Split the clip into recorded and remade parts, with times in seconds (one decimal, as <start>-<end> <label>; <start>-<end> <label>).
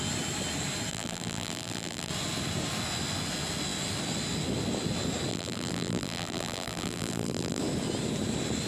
0.0-0.9 recorded; 0.9-2.1 remade; 2.1-5.3 recorded; 5.3-7.6 remade; 7.6-8.7 recorded